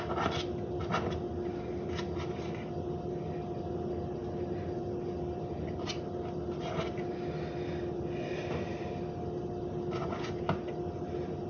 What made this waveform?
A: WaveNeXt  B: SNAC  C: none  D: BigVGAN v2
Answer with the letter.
C